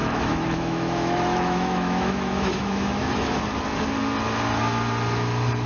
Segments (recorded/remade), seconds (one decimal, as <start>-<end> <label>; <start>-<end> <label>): 0.0-3.4 remade; 3.4-5.7 recorded